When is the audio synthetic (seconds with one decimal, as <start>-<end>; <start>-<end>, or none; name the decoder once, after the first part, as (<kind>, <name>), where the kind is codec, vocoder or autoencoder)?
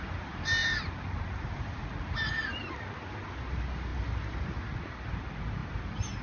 none